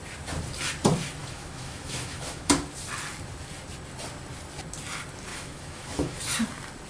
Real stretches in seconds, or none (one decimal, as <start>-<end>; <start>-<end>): 0.0-1.2; 2.5-5.3; 6.2-6.9